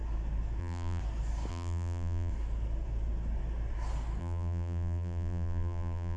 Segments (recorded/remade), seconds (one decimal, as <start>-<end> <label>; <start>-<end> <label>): 0.0-0.6 recorded; 0.6-1.0 remade; 1.0-1.5 recorded; 1.5-2.3 remade; 2.3-4.2 recorded; 4.2-6.2 remade